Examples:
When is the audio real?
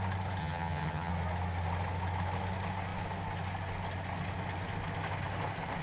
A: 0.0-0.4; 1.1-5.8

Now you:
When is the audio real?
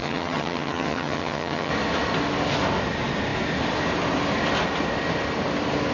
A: 1.7-5.9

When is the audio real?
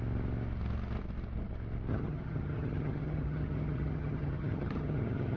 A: 0.0-1.9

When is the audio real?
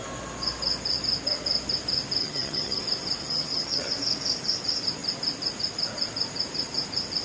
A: 0.0-2.2; 2.8-3.2; 3.9-7.2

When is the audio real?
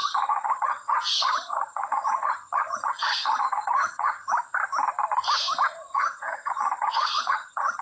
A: 4.3-5.9